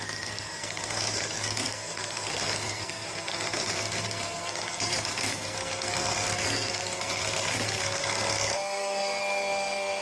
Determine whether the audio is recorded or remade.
remade